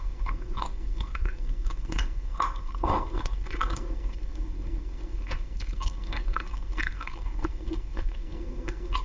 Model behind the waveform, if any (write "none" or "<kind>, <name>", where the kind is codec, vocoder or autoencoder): codec, SNAC